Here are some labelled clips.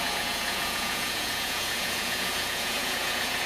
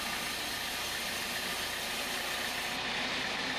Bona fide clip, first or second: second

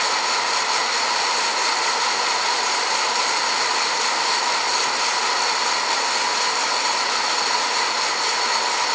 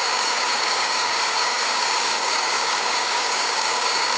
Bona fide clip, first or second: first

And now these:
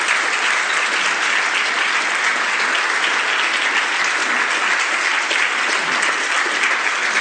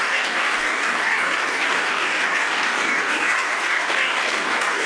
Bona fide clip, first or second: first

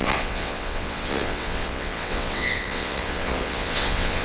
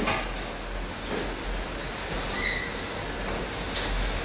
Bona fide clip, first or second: second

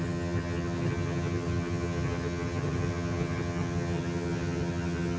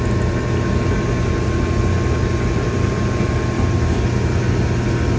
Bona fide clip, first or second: second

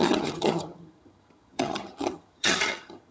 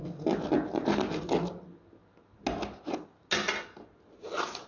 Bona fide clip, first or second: second